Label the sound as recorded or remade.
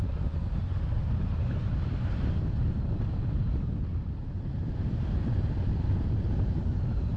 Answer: remade